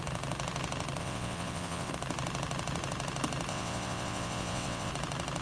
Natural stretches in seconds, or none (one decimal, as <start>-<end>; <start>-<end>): 0.0-1.0; 1.9-3.5; 4.9-5.4